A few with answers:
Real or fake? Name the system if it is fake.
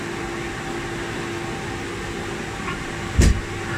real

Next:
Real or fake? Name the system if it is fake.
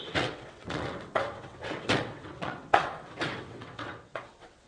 fake, vocoder, WaveNeXt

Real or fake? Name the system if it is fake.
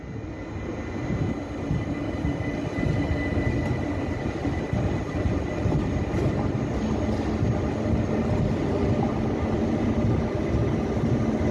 real